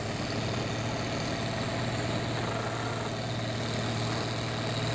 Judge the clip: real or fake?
real